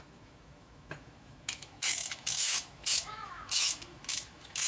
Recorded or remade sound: remade